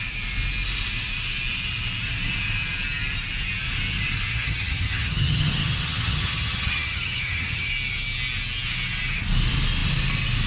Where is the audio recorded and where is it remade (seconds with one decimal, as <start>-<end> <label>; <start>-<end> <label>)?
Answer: 0.0-4.3 recorded; 4.3-7.7 remade; 7.7-10.5 recorded